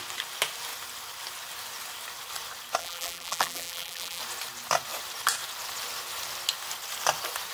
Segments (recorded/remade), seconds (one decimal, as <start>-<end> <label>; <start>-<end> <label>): 0.0-2.8 recorded; 2.8-4.2 remade; 4.2-7.5 recorded